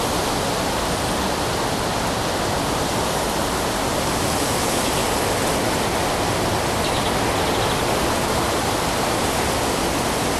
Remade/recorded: recorded